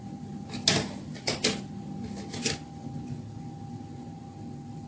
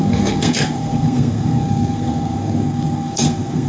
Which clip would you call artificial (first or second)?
second